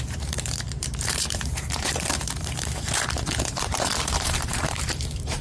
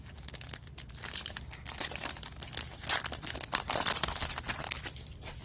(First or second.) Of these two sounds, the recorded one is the second